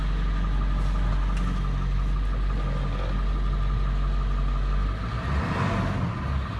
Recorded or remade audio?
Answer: recorded